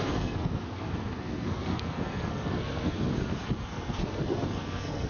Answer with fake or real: fake